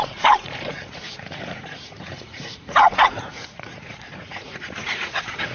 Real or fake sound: fake